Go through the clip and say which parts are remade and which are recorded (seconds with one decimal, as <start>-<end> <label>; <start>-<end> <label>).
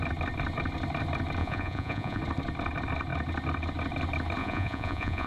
0.0-1.4 recorded; 1.4-2.2 remade; 2.2-4.4 recorded; 4.4-5.3 remade